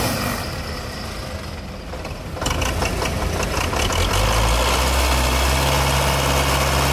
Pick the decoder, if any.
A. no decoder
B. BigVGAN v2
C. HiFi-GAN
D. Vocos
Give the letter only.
A